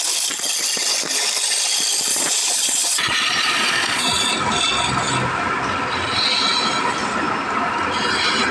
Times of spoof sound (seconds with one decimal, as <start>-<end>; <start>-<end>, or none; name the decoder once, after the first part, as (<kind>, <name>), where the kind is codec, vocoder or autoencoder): 2.1-4.3 (vocoder, Vocos)